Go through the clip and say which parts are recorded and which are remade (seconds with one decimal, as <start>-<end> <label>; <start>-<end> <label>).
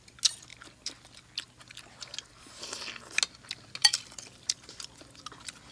0.0-3.8 recorded; 3.8-5.2 remade; 5.2-5.7 recorded